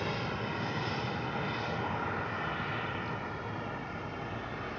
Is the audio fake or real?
real